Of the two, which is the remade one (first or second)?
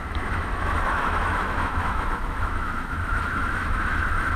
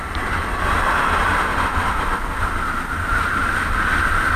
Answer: first